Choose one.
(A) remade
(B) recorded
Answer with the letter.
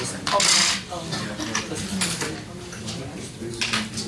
B